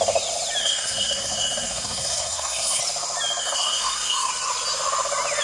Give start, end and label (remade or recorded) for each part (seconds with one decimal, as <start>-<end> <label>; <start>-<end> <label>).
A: 0.0-0.6 recorded; 0.6-2.8 remade; 2.8-3.4 recorded; 3.4-4.3 remade; 4.3-5.4 recorded